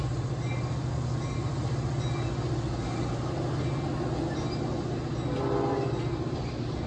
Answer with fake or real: real